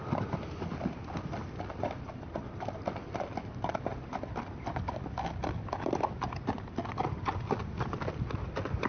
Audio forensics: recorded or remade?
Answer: recorded